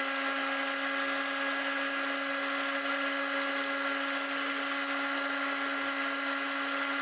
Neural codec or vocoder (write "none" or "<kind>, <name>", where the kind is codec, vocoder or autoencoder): none